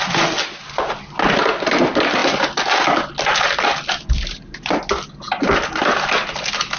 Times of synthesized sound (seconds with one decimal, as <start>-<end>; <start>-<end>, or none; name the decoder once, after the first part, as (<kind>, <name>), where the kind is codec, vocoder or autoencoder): none